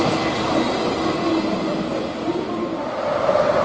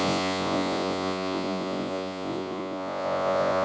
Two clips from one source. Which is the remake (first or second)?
second